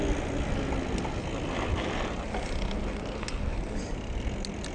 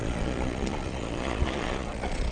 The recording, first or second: first